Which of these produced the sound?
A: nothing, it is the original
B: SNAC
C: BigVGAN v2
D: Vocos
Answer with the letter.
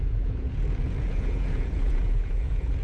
D